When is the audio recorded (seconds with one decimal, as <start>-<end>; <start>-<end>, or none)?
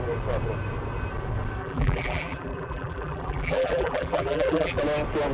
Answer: 0.0-1.6; 4.8-5.3